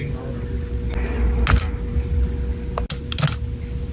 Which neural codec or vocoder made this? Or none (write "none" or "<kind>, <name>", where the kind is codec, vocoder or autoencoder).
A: none